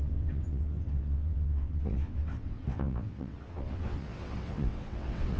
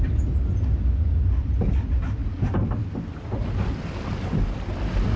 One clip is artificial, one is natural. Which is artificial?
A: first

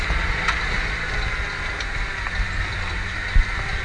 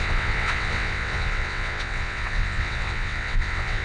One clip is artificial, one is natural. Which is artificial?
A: second